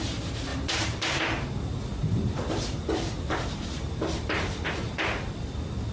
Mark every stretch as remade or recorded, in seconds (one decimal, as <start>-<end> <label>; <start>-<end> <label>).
0.0-0.5 recorded; 0.5-1.2 remade; 1.2-2.0 recorded; 2.0-4.9 remade; 4.9-5.9 recorded